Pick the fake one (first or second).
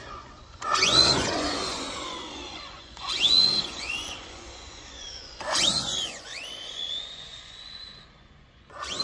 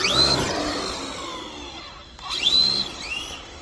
first